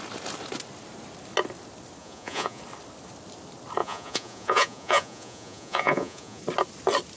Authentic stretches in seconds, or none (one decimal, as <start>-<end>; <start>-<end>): 0.0-2.0; 2.6-3.8; 6.4-7.2